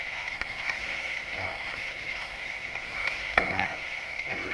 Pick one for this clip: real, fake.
fake